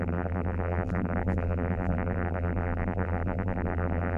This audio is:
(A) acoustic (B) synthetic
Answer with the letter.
B